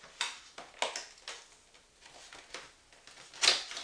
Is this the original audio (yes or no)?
yes